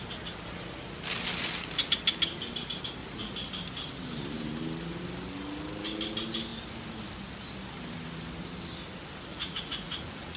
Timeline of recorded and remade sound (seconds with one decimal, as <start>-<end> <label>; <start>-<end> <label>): 0.0-3.0 recorded; 3.0-3.5 remade; 3.5-9.3 recorded; 9.3-10.4 remade